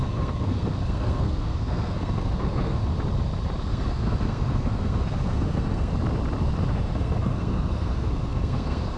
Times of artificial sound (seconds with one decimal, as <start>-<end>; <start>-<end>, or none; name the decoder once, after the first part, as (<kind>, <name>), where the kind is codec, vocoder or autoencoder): 0.0-2.8 (codec, SNAC); 3.6-5.9; 6.7-9.0